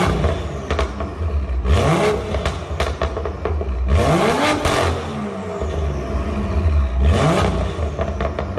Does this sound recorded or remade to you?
recorded